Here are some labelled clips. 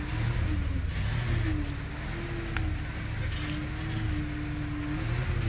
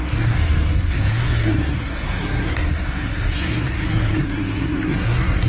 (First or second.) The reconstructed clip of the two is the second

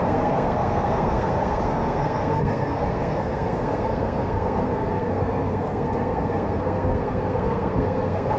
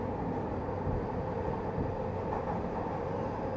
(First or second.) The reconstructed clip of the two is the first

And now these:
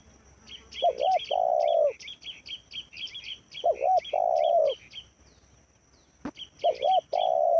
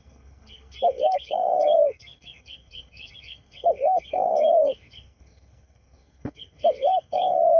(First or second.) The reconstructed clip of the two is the second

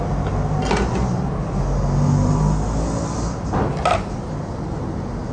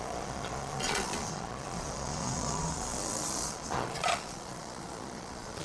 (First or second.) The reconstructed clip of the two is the second